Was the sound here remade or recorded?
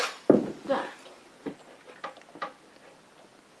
recorded